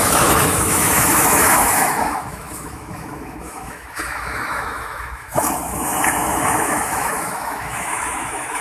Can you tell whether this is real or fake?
fake